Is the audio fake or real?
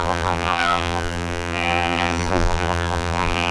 fake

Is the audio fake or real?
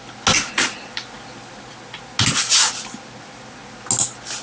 real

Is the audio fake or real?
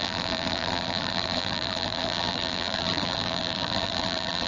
fake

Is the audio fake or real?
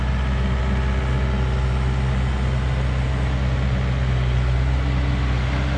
real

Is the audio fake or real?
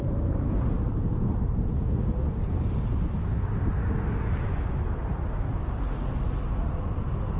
real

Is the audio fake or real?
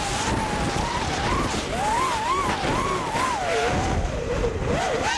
real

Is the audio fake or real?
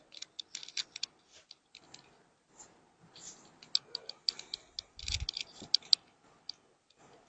real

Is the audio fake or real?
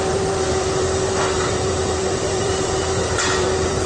fake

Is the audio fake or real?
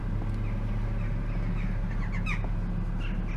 real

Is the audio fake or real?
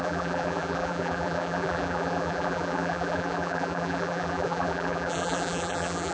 fake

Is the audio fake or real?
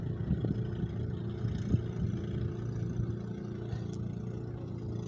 real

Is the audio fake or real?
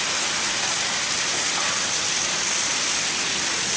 real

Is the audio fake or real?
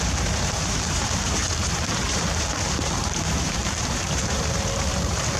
fake